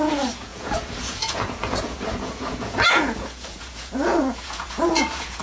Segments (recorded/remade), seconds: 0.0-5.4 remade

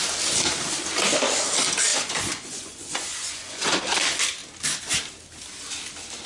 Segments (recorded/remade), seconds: 0.0-1.9 recorded; 1.9-3.8 remade; 3.8-6.3 recorded

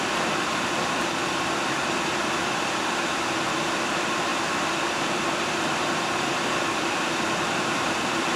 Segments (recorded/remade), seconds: 0.0-8.4 remade

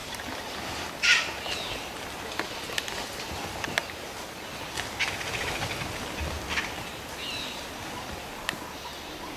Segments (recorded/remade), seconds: 0.0-0.9 remade; 0.9-9.4 recorded

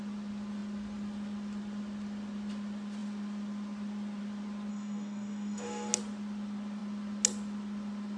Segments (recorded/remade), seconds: 0.0-4.7 recorded; 4.7-5.9 remade; 5.9-8.2 recorded

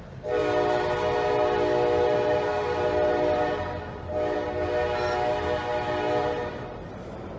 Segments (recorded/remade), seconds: 0.0-7.4 recorded